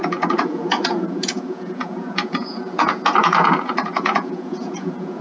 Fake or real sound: fake